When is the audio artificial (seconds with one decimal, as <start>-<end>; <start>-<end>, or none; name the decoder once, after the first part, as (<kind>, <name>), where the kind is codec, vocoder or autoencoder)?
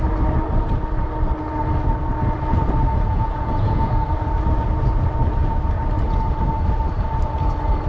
3.1-3.9 (vocoder, Vocos)